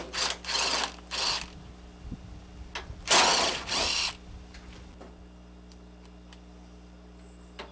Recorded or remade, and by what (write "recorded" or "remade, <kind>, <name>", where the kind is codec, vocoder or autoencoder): recorded